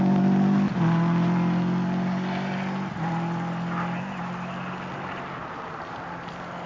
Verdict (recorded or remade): recorded